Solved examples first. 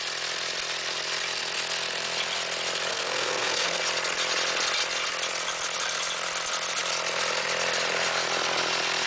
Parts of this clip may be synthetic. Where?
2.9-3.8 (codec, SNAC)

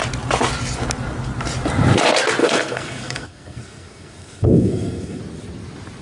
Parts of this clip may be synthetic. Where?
2.4-5.2 (codec, SNAC)

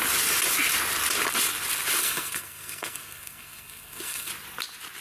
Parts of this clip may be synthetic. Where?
2.0-4.3 (codec, SNAC)